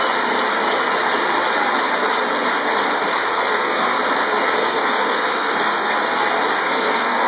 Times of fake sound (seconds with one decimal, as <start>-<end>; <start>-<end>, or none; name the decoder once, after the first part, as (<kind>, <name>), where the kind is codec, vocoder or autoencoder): 3.2-4.0 (codec, SNAC); 4.6-5.9; 6.6-7.3